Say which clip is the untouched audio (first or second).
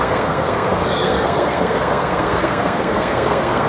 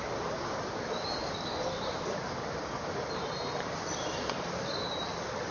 second